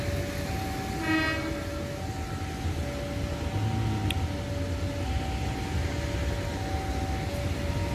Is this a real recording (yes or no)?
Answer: yes